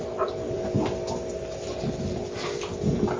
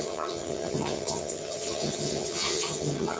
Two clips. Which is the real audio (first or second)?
first